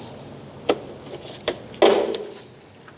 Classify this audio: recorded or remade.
recorded